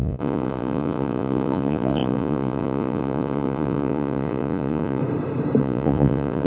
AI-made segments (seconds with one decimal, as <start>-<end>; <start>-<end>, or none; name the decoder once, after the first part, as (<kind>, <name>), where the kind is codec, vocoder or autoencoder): 0.0-5.0 (vocoder, Vocos); 5.6-6.5